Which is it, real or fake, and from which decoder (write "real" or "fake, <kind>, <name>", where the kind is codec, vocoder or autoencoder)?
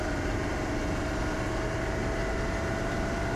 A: fake, vocoder, BigVGAN v2